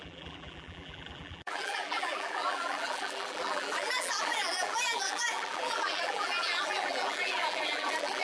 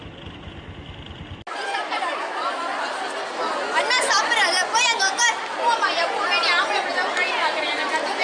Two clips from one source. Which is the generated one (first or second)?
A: first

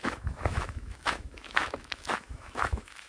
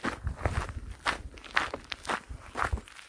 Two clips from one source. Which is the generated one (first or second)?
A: first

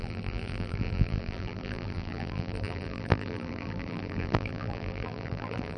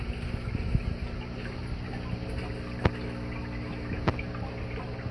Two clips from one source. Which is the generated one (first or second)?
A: first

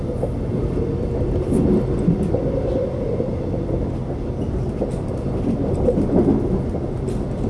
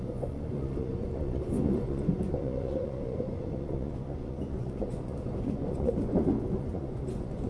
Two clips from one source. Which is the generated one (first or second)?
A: second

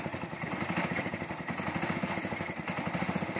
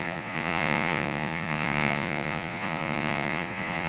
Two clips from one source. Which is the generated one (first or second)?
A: second